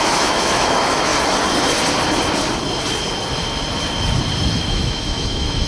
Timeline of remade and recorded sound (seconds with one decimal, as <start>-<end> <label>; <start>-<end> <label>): 0.0-1.1 remade; 1.1-4.5 recorded; 4.5-5.7 remade